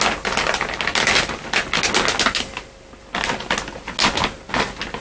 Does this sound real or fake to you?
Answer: real